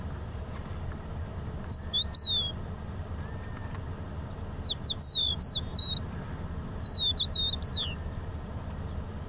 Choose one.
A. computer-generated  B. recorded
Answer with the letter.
B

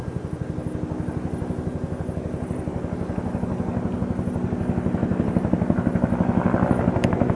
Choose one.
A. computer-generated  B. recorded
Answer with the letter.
B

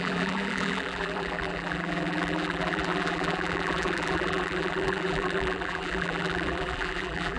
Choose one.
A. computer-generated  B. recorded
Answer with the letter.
A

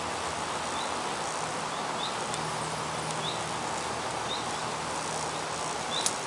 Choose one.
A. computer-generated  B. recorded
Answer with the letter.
B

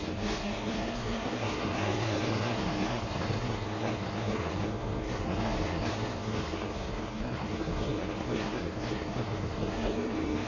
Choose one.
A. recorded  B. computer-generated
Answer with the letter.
B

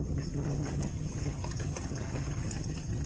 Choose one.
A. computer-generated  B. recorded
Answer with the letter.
A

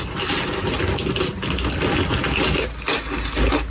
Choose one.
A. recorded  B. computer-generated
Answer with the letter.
A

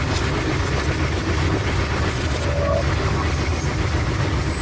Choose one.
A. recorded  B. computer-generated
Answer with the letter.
A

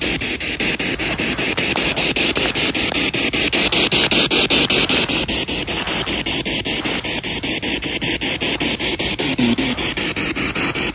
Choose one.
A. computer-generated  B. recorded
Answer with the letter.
B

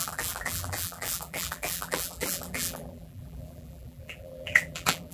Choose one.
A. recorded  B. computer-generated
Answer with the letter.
B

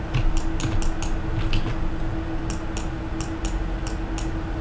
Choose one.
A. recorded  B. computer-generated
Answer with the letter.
A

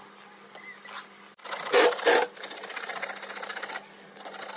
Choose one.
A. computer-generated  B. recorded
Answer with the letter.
B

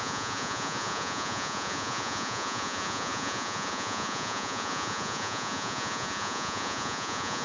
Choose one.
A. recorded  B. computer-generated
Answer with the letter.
B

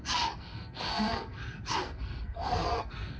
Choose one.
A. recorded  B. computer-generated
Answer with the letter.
B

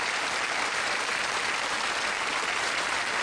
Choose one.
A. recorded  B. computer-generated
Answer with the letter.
A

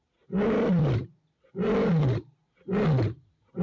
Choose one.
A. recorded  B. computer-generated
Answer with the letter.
A